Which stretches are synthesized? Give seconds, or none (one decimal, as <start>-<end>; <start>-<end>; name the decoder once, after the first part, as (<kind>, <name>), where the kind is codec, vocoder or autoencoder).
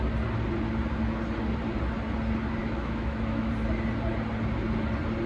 2.6-3.5 (autoencoder, DAC-VAE)